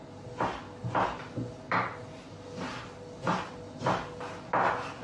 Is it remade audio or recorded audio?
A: recorded